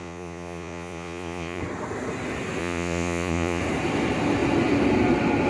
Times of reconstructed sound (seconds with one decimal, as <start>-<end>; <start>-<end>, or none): 0.0-1.6; 2.6-3.6